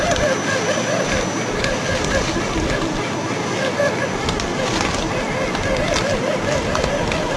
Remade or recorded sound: recorded